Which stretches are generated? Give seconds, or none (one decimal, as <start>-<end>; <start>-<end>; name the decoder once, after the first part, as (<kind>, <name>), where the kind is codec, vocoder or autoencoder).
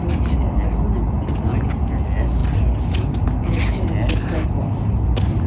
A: none